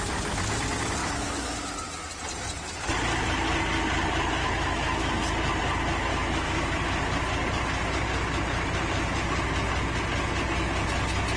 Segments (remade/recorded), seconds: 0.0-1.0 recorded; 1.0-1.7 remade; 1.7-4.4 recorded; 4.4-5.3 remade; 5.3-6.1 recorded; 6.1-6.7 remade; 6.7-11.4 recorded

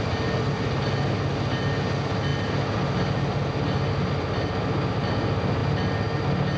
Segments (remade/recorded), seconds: 0.0-6.6 recorded

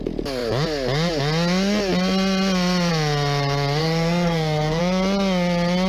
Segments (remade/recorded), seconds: 0.0-3.8 recorded; 3.8-4.8 remade; 4.8-5.9 recorded

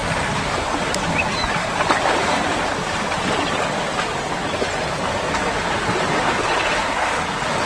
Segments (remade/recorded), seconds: 0.0-7.7 recorded

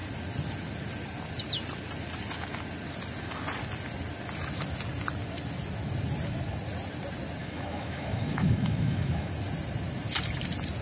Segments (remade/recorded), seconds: 0.0-7.4 recorded; 7.4-9.3 remade; 9.3-10.8 recorded

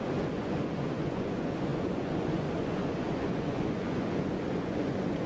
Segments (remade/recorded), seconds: 0.0-5.3 remade

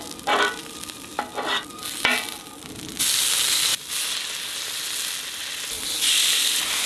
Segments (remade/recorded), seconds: 0.0-6.9 recorded

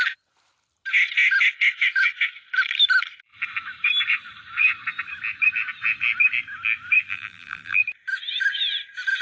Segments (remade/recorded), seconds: 0.0-7.1 recorded; 7.1-7.8 remade; 7.8-9.2 recorded